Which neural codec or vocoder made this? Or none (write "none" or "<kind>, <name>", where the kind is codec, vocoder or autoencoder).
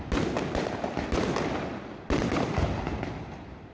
none